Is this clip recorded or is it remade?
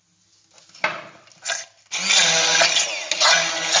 recorded